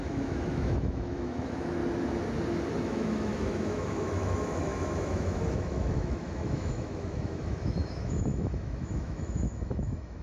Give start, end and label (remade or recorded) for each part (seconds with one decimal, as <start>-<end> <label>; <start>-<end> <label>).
0.0-1.8 remade; 1.8-2.8 recorded; 2.8-10.2 remade